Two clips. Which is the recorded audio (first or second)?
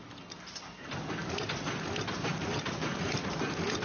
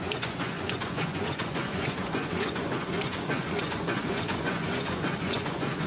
first